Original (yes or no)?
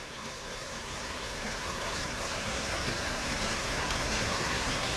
no